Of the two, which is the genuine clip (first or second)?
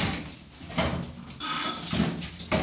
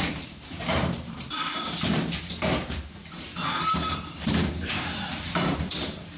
first